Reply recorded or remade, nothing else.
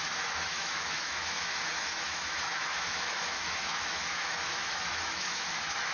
remade